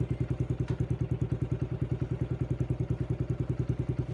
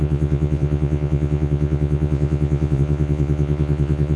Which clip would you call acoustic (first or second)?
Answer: first